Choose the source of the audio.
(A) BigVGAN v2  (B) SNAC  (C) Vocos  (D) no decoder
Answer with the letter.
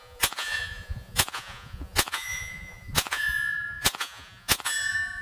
C